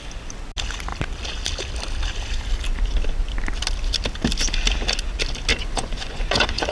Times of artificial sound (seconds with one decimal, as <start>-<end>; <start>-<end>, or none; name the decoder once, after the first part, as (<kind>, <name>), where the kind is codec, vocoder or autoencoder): 5.5-6.7 (vocoder, Vocos)